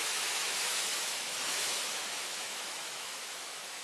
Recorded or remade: remade